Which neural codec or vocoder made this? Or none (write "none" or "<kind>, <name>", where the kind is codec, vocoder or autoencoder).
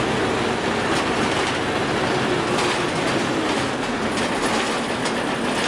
none